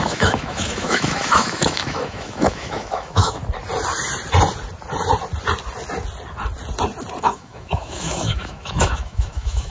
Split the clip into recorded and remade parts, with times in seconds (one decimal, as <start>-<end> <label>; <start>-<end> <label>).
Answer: 0.0-3.4 remade; 3.4-7.2 recorded; 7.2-9.7 remade